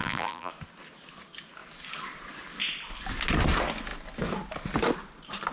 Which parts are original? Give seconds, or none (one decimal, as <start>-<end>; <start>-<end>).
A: 0.5-5.5